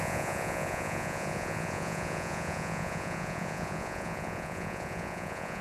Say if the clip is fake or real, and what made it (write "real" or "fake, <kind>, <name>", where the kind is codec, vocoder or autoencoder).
fake, vocoder, Vocos